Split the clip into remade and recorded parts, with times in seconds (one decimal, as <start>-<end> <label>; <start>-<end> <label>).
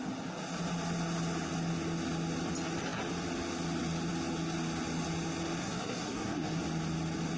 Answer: 0.0-5.6 recorded; 5.6-6.6 remade; 6.6-7.4 recorded